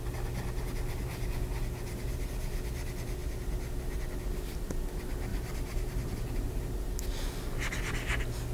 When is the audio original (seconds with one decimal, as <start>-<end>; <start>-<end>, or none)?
0.0-5.3; 6.7-8.5